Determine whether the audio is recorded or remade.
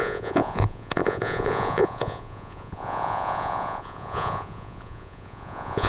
remade